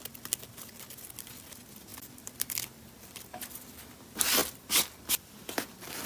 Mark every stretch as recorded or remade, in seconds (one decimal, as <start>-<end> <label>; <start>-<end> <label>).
0.0-1.9 recorded; 1.9-3.2 remade; 3.2-6.1 recorded